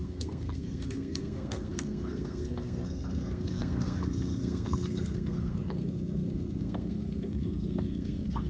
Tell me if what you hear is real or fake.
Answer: fake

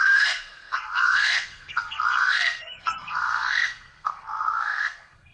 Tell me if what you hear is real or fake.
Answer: fake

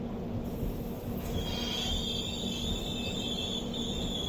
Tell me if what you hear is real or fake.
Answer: real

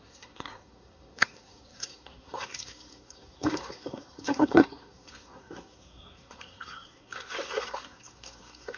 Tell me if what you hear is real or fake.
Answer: fake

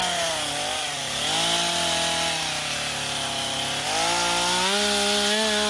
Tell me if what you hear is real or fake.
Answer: real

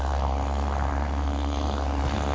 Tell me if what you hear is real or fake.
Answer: fake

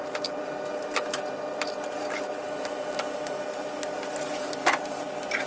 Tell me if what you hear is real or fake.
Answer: real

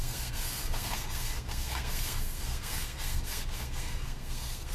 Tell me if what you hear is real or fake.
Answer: fake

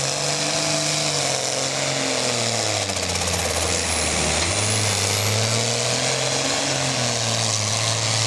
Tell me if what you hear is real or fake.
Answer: real